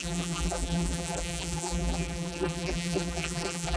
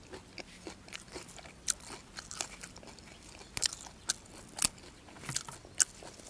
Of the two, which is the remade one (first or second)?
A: first